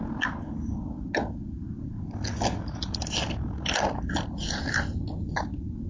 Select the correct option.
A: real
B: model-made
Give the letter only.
A